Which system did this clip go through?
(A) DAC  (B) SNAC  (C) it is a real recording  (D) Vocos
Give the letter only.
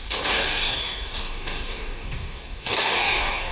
A